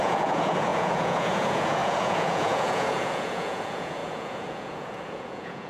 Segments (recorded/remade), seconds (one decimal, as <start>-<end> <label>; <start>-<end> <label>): 0.0-5.7 remade